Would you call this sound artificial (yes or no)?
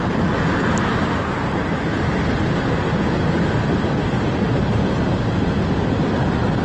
no